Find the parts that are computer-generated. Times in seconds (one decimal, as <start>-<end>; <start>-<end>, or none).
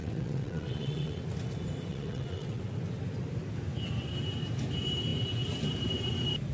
0.0-1.2; 1.9-2.6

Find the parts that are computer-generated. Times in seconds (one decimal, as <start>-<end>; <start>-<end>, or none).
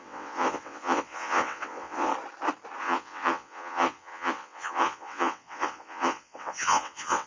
0.0-2.1; 2.8-7.3